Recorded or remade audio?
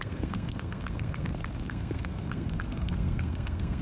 remade